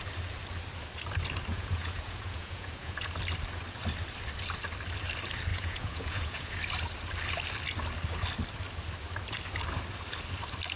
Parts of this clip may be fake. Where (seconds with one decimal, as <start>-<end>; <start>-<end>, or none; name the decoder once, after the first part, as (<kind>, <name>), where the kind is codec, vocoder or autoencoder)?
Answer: 1.5-3.1 (vocoder, Vocos); 5.5-6.5